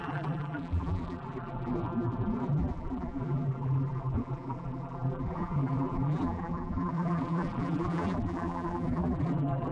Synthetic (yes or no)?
yes